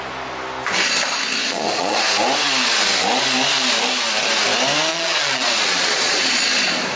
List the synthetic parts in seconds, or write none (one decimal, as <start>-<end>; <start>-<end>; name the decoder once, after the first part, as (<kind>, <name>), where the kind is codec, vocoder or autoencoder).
1.4-2.0 (vocoder, Vocos); 4.9-6.3